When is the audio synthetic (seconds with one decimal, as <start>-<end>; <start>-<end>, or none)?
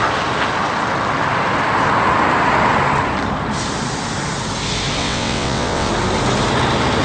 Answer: 5.0-5.9